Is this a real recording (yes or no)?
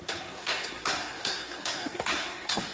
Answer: no